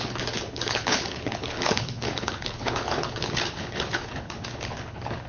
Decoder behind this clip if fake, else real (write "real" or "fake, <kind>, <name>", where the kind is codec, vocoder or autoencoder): fake, codec, HILCodec